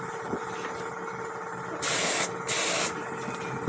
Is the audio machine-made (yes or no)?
no